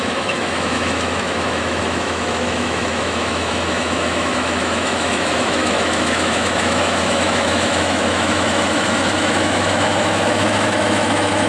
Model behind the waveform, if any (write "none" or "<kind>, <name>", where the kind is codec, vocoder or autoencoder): autoencoder, DAC-VAE